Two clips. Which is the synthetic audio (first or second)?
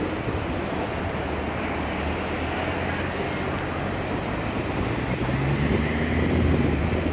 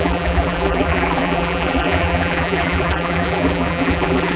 second